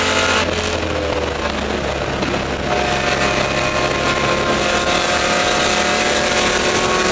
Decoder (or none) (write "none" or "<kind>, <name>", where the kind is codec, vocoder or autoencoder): none